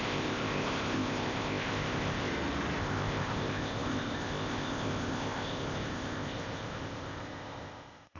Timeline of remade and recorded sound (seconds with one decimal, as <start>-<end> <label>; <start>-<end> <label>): 0.0-2.3 remade; 2.3-2.8 recorded; 2.8-8.2 remade